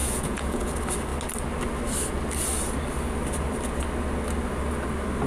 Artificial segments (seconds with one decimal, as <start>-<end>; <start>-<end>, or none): 0.0-0.7